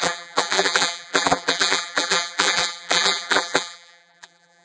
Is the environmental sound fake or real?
fake